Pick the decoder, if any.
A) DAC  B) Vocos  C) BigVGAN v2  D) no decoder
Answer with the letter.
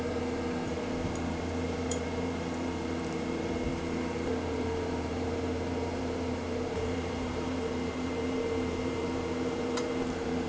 C